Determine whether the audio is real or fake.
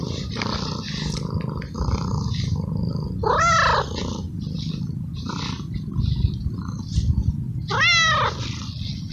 real